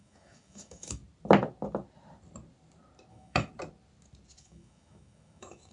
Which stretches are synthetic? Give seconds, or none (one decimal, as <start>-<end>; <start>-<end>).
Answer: 0.0-1.0; 3.1-3.5; 4.4-5.7

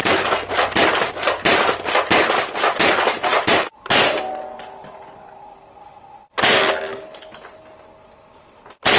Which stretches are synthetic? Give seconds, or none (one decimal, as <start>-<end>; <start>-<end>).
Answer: none

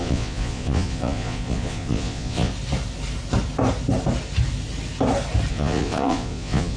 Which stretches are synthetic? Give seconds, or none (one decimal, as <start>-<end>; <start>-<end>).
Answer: 0.0-2.5; 5.5-6.8

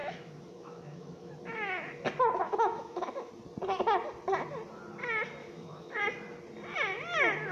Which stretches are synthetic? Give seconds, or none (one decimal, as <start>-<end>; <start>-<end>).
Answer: 0.0-1.3; 2.4-3.3; 5.4-6.0